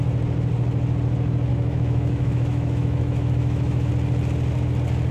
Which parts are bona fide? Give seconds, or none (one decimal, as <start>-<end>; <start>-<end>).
0.0-1.5; 3.9-5.1